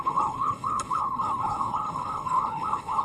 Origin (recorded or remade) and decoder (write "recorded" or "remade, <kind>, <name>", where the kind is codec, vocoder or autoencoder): remade, codec, HILCodec